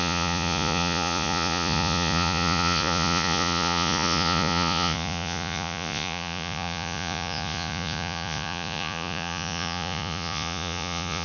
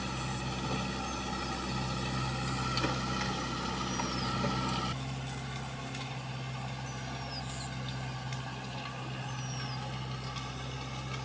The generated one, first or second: first